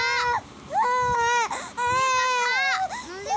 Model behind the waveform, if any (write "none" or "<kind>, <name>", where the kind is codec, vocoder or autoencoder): none